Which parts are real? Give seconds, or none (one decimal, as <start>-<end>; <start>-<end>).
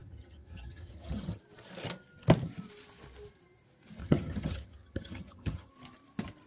1.4-4.0; 5.7-6.5